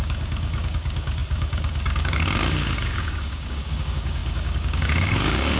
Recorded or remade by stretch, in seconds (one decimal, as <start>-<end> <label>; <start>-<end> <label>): 0.0-5.6 remade